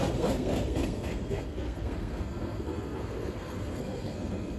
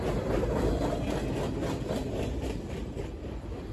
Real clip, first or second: second